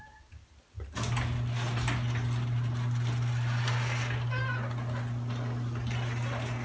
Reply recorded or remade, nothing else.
recorded